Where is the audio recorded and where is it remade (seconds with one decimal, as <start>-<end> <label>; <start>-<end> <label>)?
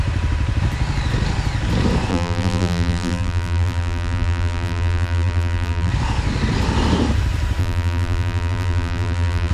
0.0-2.1 recorded; 2.1-5.9 remade; 5.9-7.6 recorded; 7.6-9.5 remade